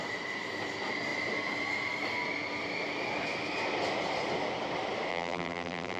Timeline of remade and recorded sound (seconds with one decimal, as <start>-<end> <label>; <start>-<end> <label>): 0.0-5.1 recorded; 5.1-6.0 remade